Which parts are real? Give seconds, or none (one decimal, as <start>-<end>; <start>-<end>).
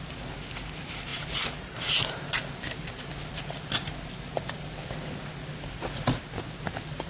0.0-7.1